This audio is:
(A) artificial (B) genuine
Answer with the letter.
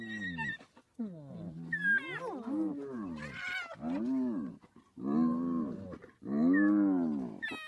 B